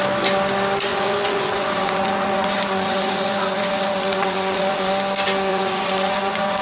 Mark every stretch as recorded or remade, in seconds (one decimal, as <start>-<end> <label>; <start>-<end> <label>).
0.0-0.9 recorded; 0.9-4.9 remade; 4.9-5.5 recorded; 5.5-6.6 remade